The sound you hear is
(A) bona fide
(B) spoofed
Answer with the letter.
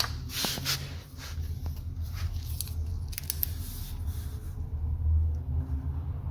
A